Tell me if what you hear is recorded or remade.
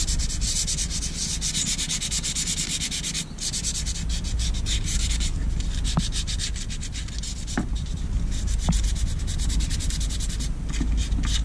recorded